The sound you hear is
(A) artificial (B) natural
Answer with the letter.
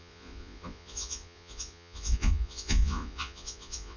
A